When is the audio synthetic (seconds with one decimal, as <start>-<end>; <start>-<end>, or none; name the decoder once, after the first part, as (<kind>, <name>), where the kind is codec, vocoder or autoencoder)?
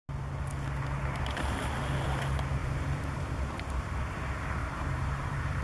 2.6-3.8 (vocoder, BigVGAN v2); 4.6-5.6